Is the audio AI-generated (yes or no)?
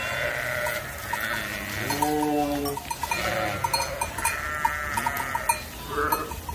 no